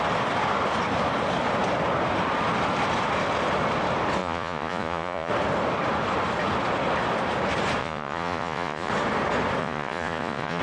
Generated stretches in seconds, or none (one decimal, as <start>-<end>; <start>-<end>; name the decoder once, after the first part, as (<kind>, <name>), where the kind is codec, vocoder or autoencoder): 4.2-5.3 (vocoder, Vocos); 7.8-8.9; 9.6-10.6